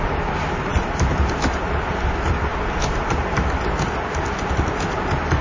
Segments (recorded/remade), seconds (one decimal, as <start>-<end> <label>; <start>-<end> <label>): 0.0-5.4 recorded